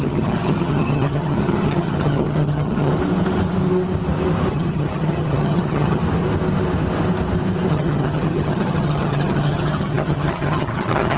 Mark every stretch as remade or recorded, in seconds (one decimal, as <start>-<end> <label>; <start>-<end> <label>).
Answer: 0.0-2.9 remade; 2.9-4.5 recorded; 4.5-6.0 remade; 6.0-7.7 recorded; 7.7-11.2 remade